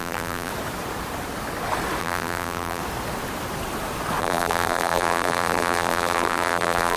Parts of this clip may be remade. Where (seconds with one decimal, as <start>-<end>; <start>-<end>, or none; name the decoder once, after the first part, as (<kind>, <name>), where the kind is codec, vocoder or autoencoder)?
0.0-0.5 (vocoder, BigVGAN v2); 2.0-2.8; 4.2-7.0